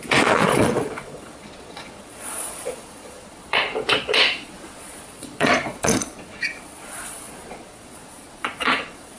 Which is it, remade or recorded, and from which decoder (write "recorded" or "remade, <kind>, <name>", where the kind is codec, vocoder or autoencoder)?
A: remade, vocoder, Vocos